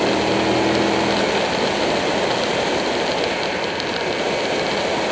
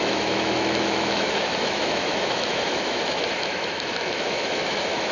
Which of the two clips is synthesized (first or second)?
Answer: second